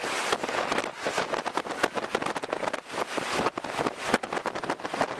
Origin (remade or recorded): recorded